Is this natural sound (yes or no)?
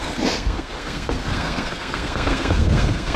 no